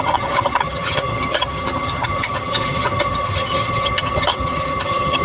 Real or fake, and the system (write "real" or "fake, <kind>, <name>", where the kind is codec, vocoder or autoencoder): fake, vocoder, HiFi-GAN